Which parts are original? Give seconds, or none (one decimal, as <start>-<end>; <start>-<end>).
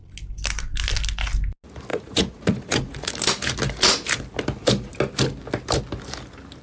0.0-1.9; 3.1-6.6